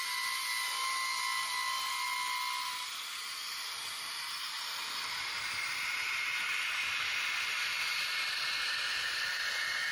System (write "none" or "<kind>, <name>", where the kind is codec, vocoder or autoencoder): none